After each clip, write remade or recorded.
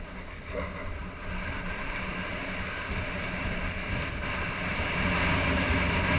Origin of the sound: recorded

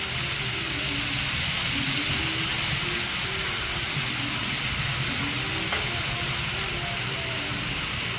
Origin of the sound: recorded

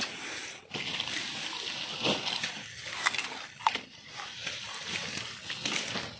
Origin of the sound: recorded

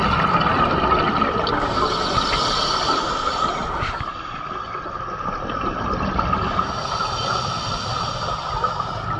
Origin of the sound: recorded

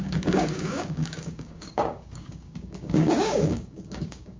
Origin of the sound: remade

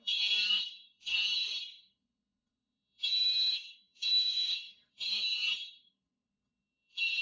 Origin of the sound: remade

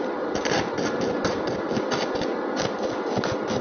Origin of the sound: recorded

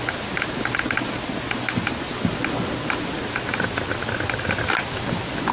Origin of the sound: recorded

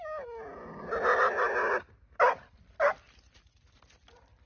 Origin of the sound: recorded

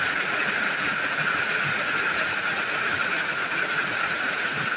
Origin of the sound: remade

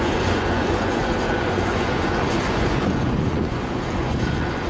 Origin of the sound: remade